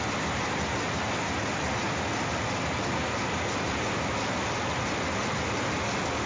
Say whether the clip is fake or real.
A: real